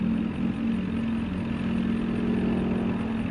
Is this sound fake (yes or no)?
no